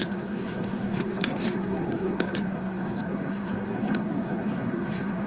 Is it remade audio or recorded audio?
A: remade